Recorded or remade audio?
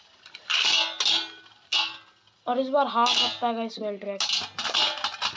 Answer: recorded